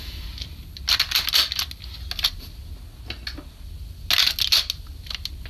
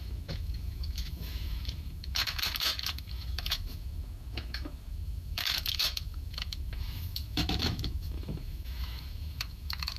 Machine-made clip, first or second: second